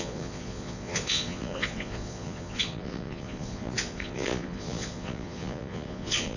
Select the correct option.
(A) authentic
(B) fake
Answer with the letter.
B